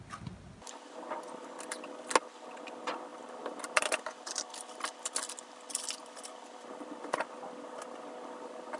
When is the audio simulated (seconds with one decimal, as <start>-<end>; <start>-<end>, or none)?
3.1-7.0